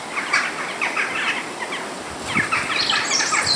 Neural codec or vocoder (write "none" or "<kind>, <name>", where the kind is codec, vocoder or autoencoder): none